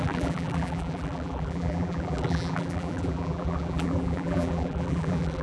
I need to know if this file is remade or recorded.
remade